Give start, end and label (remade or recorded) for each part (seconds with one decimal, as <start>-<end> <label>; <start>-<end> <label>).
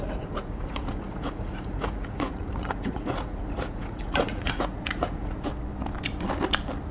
0.0-5.5 remade; 5.5-6.9 recorded